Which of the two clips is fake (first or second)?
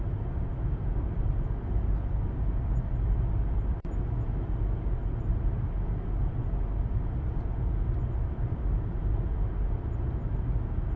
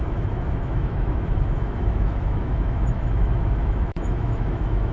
second